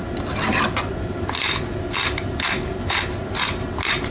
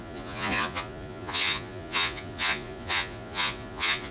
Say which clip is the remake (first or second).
second